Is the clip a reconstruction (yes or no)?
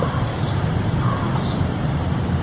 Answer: yes